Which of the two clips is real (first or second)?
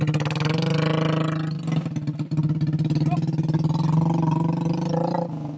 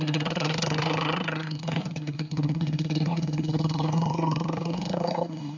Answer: first